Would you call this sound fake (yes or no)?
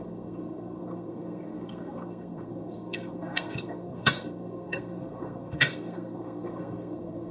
yes